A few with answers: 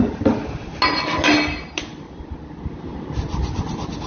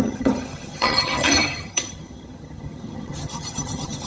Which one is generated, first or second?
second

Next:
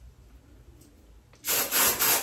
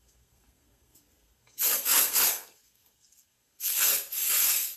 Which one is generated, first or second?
second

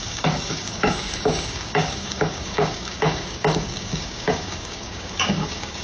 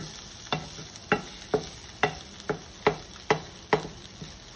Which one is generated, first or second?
first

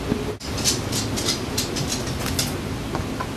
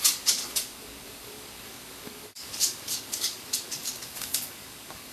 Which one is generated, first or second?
second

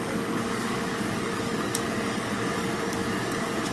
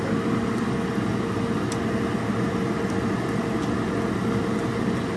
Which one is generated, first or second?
first